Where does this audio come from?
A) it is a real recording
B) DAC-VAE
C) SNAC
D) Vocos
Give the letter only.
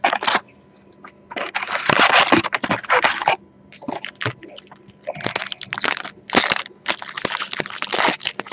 A